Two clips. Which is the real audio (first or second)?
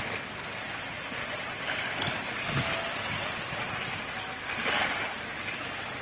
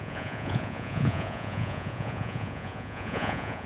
first